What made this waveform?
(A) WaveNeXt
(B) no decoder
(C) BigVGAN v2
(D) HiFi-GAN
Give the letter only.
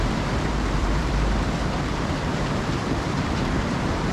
C